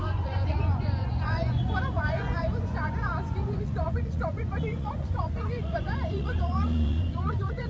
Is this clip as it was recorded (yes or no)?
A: no